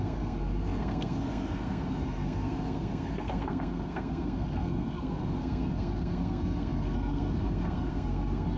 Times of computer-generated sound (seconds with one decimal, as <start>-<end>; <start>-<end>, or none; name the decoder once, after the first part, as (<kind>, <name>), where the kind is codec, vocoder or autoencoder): 0.0-8.6 (codec, SNAC)